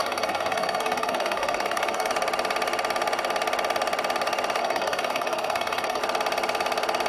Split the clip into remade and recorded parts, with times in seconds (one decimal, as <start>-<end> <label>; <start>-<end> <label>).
0.0-2.1 remade; 2.1-4.6 recorded; 4.6-6.0 remade; 6.0-7.1 recorded